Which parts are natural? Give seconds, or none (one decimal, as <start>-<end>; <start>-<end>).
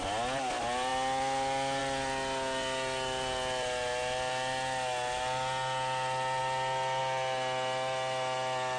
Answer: 0.0-8.8